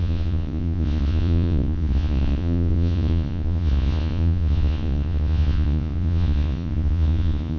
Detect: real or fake fake